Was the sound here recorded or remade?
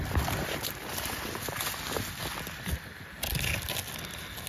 recorded